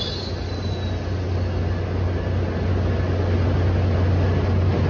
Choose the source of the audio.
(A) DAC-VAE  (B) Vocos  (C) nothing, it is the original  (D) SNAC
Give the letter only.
C